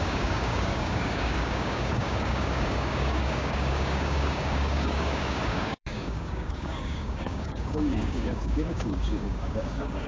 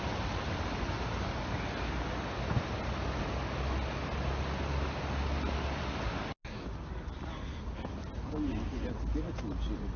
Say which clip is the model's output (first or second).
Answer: first